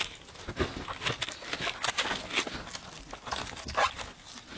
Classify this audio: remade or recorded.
recorded